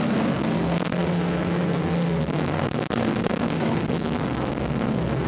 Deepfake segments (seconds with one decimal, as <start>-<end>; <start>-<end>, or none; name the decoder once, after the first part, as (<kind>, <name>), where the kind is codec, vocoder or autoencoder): 0.0-5.3 (codec, SNAC)